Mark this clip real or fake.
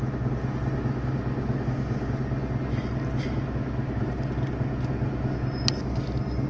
real